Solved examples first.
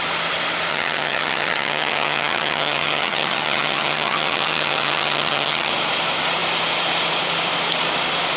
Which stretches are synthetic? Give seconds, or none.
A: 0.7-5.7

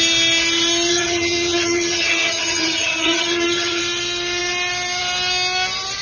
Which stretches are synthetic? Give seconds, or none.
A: 0.9-3.8